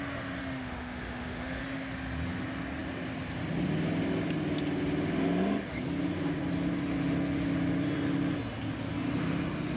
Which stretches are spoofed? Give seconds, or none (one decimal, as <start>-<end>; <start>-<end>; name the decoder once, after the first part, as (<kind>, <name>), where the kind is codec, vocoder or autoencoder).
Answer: 0.4-1.6 (autoencoder, DAC-VAE)